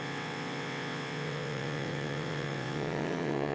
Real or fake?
fake